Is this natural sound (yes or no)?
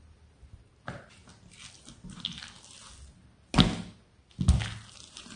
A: yes